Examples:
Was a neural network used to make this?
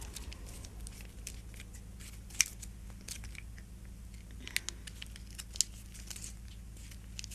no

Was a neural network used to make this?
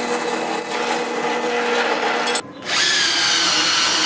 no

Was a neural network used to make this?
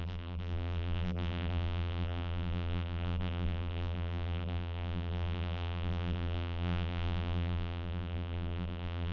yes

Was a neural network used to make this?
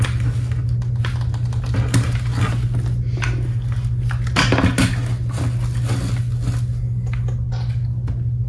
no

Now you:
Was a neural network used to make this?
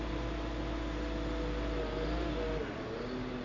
no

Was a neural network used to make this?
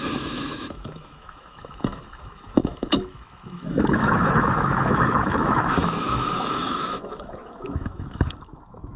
yes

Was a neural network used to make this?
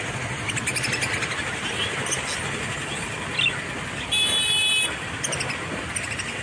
no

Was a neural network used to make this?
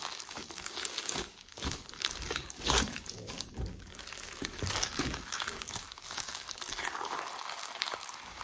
yes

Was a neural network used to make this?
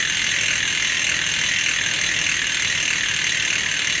no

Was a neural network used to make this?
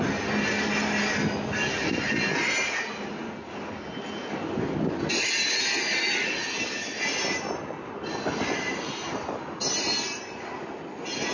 no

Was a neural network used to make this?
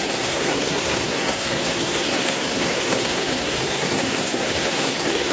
yes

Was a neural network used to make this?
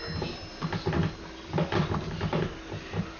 no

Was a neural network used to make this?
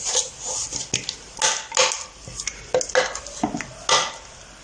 no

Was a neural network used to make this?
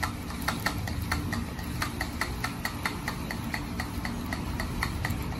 no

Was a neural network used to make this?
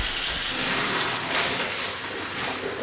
no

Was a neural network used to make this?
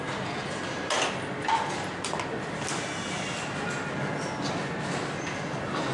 no